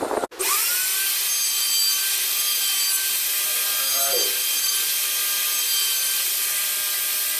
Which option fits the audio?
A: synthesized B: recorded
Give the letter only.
B